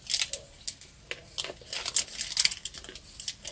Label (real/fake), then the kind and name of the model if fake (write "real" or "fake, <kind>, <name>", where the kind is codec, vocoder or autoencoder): real